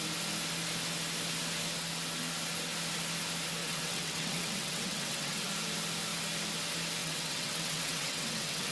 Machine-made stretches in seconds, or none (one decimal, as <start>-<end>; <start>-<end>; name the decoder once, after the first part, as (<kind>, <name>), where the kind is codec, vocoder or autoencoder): 3.6-5.5 (vocoder, WaveNeXt); 7.0-8.7